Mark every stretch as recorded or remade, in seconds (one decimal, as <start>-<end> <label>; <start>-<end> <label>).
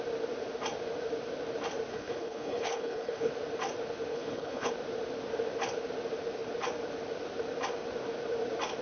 0.0-1.9 recorded; 1.9-3.3 remade; 3.3-4.1 recorded; 4.1-4.7 remade; 4.7-8.8 recorded